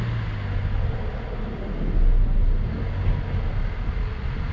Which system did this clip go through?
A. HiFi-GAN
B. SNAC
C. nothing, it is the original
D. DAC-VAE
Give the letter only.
C